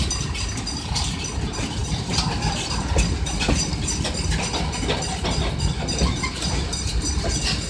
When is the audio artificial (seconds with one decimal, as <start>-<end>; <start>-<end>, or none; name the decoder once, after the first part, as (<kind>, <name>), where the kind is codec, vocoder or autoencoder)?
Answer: none